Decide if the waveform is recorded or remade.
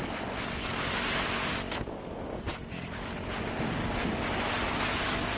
recorded